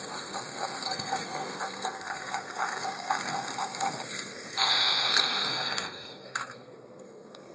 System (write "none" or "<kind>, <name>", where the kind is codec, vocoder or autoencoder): codec, SNAC